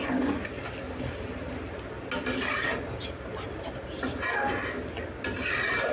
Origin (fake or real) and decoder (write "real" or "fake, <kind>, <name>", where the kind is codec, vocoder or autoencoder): real